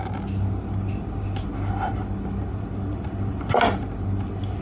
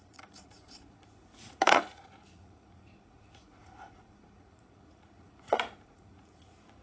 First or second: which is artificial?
second